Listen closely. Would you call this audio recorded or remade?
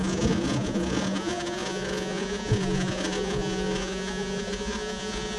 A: remade